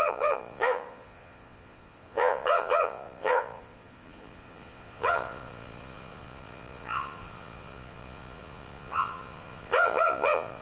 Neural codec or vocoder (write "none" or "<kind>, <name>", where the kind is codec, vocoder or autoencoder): vocoder, Vocos